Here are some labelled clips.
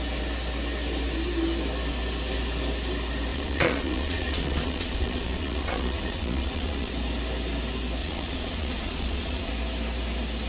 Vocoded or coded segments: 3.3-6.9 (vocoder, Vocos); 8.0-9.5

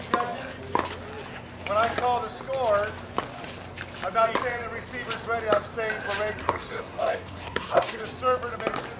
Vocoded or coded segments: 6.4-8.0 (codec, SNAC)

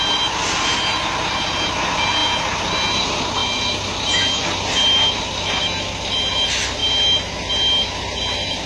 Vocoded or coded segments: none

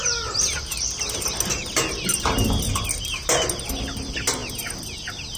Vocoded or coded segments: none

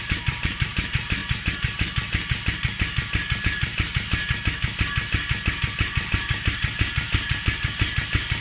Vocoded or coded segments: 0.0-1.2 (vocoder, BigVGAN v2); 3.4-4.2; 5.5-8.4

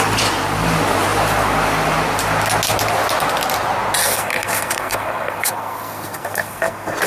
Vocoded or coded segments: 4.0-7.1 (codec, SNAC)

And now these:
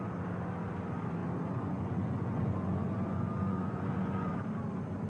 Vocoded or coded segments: 1.2-4.3 (vocoder, Vocos)

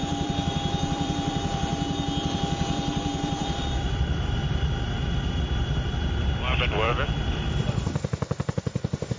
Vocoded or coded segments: 0.0-1.7 (vocoder, BigVGAN v2); 2.2-9.2